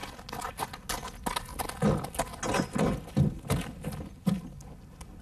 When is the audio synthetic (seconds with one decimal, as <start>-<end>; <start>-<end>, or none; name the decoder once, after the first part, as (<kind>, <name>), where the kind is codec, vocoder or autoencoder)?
none